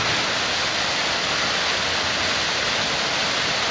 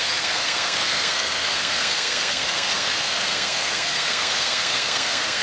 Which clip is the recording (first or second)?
first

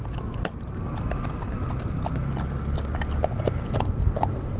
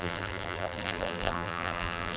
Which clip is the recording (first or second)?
first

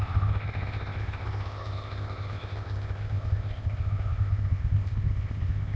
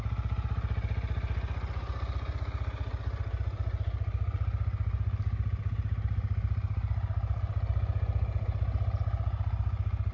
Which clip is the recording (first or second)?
second